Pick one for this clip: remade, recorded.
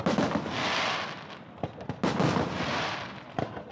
recorded